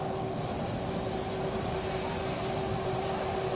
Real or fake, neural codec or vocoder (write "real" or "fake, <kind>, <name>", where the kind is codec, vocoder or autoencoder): real